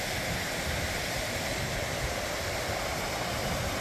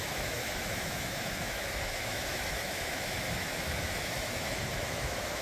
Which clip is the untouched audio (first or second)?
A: first